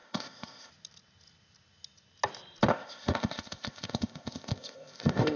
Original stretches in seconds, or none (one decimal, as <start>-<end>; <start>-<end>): 0.7-2.7